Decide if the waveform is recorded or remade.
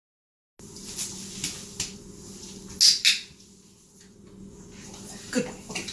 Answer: recorded